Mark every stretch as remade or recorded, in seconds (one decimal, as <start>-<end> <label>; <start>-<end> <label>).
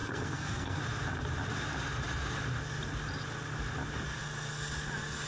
0.0-0.8 remade; 0.8-5.3 recorded